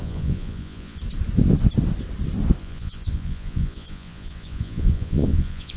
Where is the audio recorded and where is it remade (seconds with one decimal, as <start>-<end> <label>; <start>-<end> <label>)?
0.0-1.0 remade; 1.0-2.6 recorded; 2.6-5.8 remade